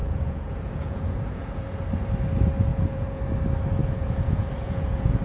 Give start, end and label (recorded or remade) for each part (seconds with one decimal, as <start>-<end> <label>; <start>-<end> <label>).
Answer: 0.0-1.8 remade; 1.8-2.7 recorded; 2.7-3.2 remade; 3.2-3.8 recorded; 3.8-5.2 remade